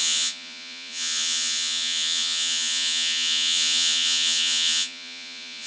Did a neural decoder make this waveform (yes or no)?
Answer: yes